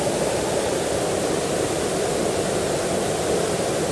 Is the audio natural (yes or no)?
yes